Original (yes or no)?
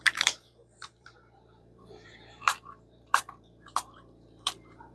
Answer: no